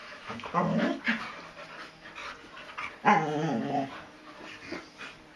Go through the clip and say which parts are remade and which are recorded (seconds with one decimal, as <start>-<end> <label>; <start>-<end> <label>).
0.0-1.0 remade; 1.0-5.4 recorded